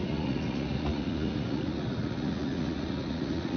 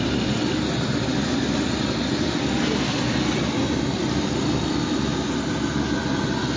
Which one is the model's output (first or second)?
first